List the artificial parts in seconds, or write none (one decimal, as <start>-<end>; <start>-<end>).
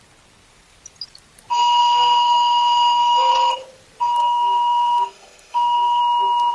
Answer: 1.8-3.3; 4.2-6.0